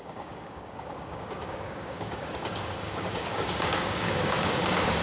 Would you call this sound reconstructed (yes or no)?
yes